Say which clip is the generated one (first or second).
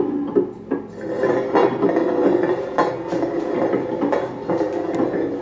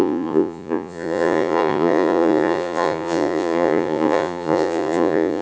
second